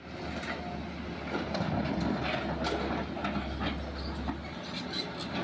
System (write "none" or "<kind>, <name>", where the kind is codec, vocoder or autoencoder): none